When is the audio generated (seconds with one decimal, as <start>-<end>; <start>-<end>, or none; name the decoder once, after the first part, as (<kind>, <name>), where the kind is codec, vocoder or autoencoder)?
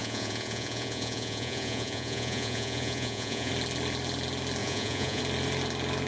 0.0-3.5 (vocoder, Vocos); 4.6-5.2